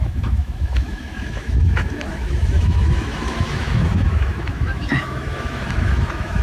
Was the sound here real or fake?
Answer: fake